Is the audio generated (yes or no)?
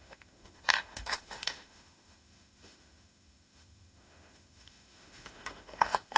yes